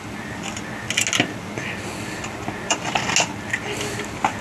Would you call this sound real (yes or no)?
yes